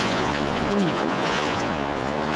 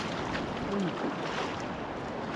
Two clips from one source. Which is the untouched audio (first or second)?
second